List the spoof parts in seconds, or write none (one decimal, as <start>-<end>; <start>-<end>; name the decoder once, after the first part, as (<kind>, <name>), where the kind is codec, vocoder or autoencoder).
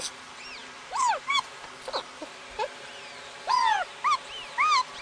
none